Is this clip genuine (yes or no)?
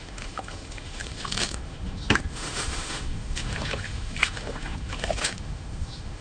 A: no